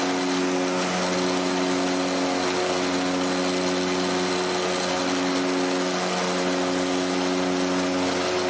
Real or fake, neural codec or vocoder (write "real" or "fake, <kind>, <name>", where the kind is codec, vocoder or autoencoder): real